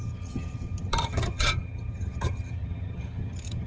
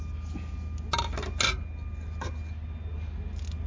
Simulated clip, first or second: first